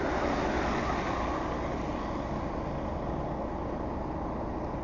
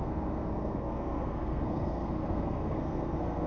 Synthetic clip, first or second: second